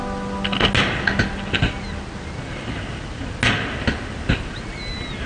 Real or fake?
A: real